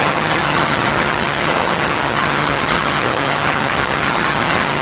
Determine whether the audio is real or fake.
fake